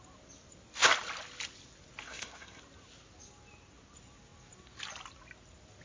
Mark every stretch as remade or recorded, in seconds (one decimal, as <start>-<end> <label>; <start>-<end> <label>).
0.0-2.0 recorded; 2.0-2.6 remade; 2.6-5.8 recorded